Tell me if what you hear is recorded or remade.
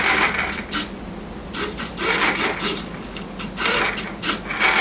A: recorded